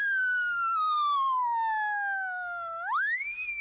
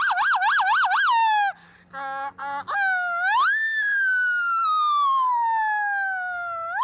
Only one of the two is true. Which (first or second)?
second